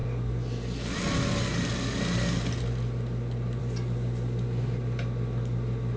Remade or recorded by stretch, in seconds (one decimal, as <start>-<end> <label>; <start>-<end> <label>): 0.0-6.0 recorded